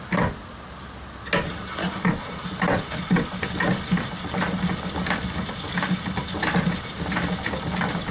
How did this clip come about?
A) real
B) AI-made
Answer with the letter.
A